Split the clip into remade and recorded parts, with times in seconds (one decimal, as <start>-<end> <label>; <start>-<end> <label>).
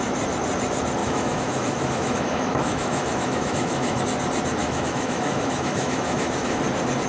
0.0-1.0 recorded; 1.0-4.0 remade; 4.0-4.6 recorded; 4.6-6.6 remade; 6.6-7.1 recorded